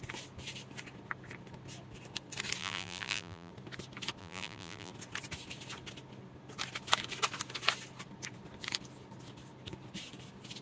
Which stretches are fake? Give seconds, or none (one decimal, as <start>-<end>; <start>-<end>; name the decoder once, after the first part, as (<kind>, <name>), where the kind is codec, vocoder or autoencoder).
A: 2.6-3.5 (vocoder, BigVGAN v2); 4.2-4.9